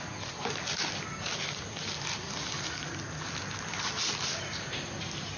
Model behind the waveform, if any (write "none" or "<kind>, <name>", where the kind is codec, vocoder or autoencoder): none